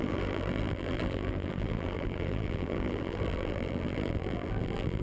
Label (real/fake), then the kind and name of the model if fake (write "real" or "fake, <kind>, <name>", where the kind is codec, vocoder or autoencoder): fake, vocoder, BigVGAN v2